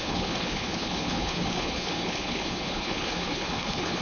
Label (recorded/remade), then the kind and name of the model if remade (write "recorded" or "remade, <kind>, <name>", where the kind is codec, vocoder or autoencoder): remade, codec, HILCodec